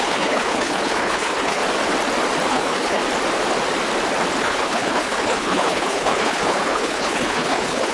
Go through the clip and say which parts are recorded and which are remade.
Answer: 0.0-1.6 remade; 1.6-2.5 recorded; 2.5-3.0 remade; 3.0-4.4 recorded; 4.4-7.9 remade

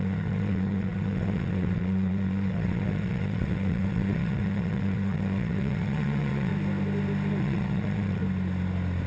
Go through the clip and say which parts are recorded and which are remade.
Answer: 0.0-6.5 remade; 6.5-7.4 recorded; 7.4-8.2 remade; 8.2-9.1 recorded